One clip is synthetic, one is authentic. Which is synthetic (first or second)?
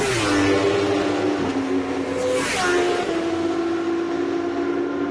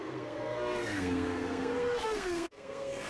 second